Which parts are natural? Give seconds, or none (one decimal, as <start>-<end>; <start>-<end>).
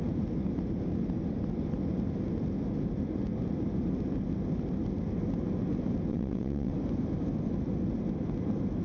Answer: 0.0-6.1; 6.7-8.8